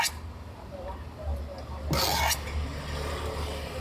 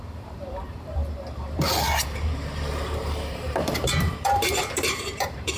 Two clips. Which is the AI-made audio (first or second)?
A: second